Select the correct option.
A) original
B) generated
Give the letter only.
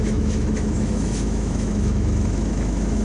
B